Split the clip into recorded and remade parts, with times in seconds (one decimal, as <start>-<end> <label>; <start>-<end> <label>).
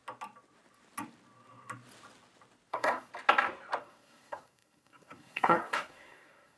0.0-2.7 recorded; 2.7-3.1 remade; 3.1-3.8 recorded; 3.8-6.6 remade